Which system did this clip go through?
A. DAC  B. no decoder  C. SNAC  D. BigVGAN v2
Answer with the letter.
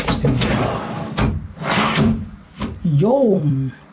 D